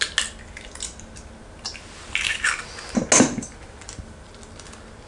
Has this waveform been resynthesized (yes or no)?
no